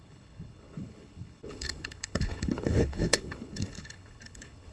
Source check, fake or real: fake